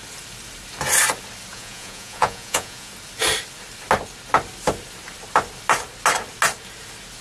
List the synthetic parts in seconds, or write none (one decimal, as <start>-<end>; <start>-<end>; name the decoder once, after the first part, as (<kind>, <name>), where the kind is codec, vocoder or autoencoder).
1.5-2.9 (vocoder, Vocos)